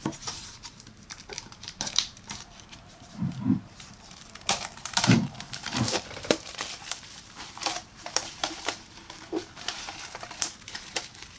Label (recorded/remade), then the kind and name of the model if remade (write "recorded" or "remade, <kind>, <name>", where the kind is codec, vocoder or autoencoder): remade, vocoder, BigVGAN v2